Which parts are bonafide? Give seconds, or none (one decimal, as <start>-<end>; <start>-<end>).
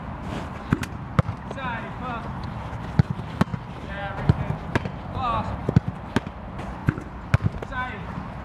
0.0-5.6; 6.1-8.4